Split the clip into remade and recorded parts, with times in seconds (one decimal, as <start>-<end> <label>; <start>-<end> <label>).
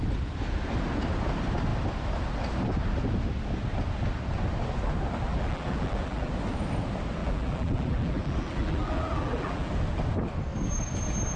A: 0.0-5.3 recorded; 5.3-6.3 remade; 6.3-7.2 recorded; 7.2-9.7 remade; 9.7-11.4 recorded